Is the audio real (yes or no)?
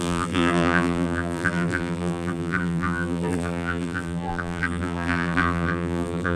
no